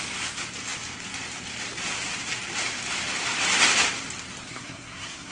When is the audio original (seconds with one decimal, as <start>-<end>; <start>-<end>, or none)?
0.0-4.4